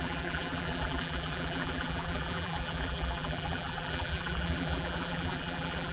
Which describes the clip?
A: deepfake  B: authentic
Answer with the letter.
A